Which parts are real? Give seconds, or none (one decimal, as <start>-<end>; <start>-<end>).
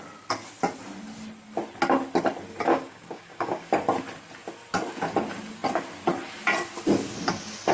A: 0.0-2.7; 3.7-7.7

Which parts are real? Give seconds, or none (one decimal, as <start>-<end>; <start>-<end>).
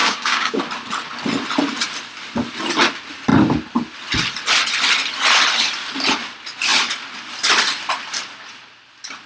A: 0.6-9.3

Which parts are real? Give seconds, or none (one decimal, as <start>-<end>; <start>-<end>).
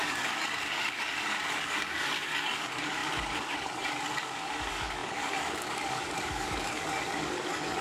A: none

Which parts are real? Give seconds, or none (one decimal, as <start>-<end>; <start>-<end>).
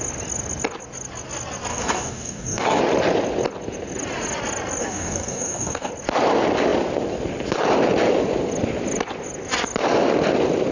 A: 0.0-1.7; 2.8-4.8; 5.9-10.7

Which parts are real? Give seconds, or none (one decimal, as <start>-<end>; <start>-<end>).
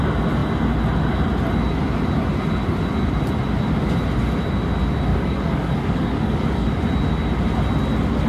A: 0.0-5.1; 6.7-8.3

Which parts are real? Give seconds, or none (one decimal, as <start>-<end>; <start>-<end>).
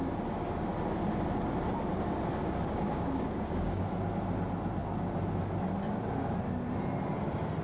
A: 0.0-2.3; 3.8-7.6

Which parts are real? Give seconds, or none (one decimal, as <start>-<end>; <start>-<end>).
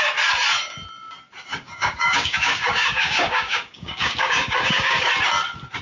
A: 0.0-1.5; 5.0-5.8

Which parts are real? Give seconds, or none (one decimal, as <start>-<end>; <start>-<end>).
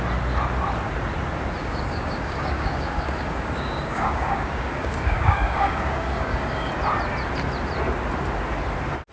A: 0.0-1.6; 6.7-9.1